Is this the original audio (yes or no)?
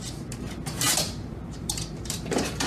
no